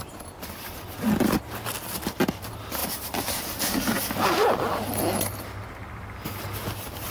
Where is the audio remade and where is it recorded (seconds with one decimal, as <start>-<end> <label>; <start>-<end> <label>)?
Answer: 0.0-7.1 recorded